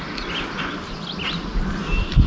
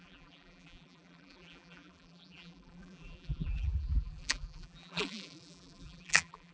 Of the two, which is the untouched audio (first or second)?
first